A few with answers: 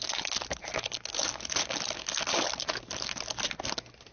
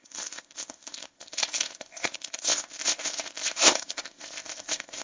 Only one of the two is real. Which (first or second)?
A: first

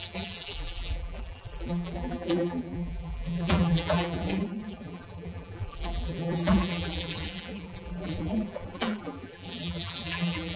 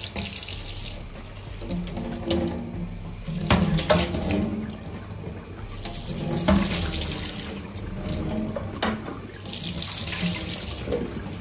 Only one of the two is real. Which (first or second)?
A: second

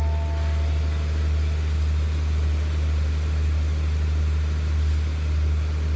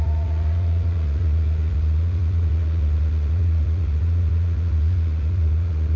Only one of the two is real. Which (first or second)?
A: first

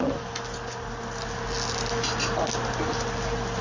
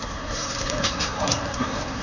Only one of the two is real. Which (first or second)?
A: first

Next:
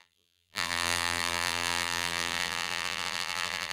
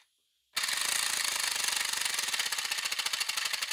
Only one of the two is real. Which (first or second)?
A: second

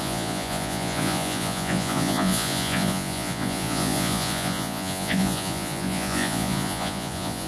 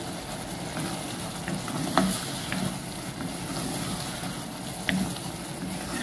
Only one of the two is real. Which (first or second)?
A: second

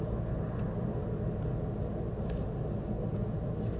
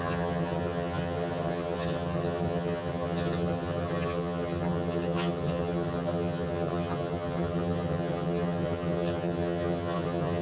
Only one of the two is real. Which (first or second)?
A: first